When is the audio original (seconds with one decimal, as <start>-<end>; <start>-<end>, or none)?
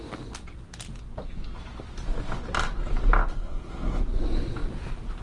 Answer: 0.0-3.3; 4.0-5.2